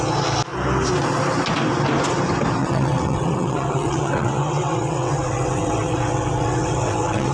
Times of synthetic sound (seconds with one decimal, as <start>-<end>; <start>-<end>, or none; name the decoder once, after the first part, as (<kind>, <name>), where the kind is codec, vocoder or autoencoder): 2.6-7.3 (vocoder, WaveNeXt)